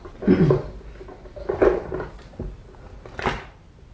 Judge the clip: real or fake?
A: real